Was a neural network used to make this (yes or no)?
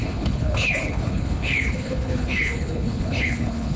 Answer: yes